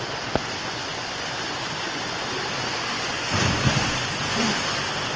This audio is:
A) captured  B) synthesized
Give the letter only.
B